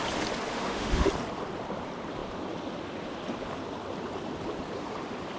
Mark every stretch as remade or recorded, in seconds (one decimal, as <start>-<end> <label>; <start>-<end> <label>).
0.0-0.5 recorded; 0.5-1.1 remade; 1.1-5.4 recorded